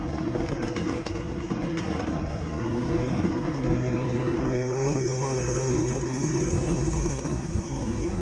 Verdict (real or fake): fake